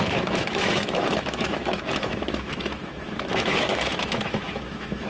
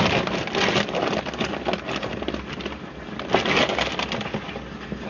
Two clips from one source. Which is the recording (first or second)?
second